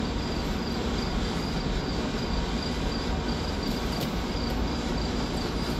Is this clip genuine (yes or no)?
yes